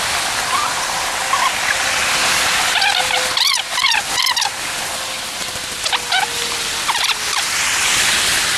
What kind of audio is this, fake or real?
real